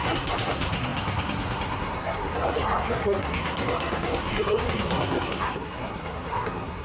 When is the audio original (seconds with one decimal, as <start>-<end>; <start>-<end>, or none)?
none